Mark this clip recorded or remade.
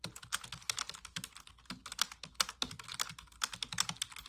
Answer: recorded